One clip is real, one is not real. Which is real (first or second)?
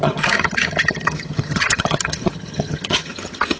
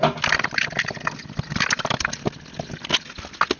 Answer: second